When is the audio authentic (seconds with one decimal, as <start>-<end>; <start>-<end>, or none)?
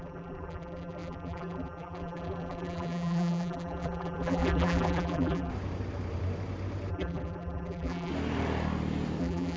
5.5-6.9; 8.1-9.2